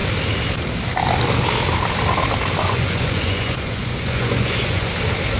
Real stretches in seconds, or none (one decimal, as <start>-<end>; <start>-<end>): 0.0-2.6; 4.9-5.4

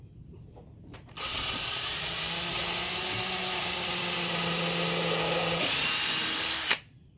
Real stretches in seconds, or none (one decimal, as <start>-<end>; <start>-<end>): 0.0-1.3; 2.2-7.2

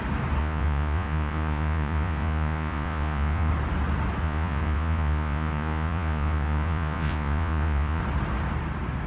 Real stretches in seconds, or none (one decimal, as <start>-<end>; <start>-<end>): 0.0-0.4; 3.5-4.2; 8.0-9.1

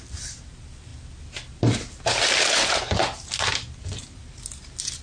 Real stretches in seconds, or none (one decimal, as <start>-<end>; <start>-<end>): 0.0-5.0

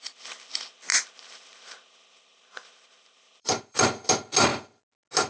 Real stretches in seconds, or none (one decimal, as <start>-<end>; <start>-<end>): 0.0-0.9; 4.1-5.3